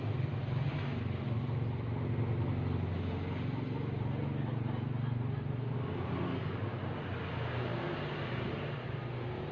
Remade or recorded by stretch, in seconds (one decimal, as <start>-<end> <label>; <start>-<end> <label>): 0.0-9.5 recorded